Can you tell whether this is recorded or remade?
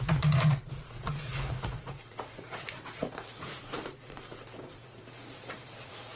remade